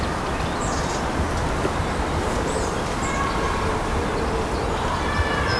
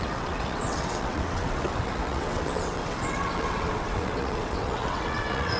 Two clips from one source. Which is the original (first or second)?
first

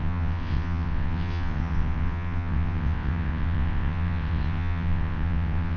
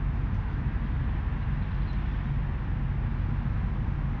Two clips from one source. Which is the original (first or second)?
second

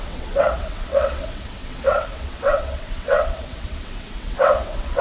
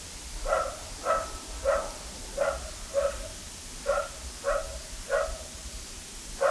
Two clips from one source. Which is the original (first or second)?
second